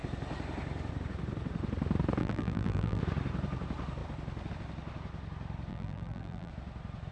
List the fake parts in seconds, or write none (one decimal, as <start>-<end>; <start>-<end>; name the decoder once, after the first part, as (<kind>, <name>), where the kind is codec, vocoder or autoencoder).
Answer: 2.2-3.0 (vocoder, BigVGAN v2); 5.7-6.5